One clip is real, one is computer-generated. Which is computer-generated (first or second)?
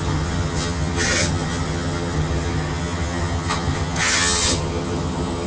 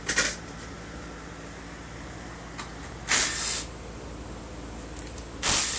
first